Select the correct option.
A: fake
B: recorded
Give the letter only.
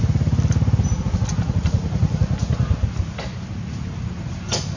B